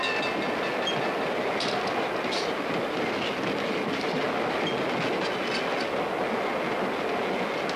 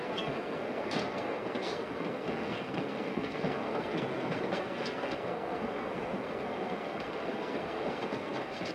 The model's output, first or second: second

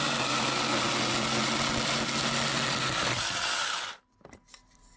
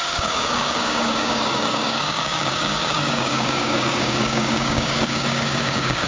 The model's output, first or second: second